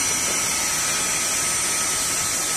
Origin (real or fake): real